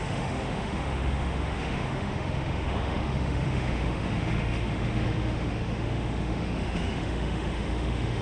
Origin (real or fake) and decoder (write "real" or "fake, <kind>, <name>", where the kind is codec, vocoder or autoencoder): fake, autoencoder, DAC-VAE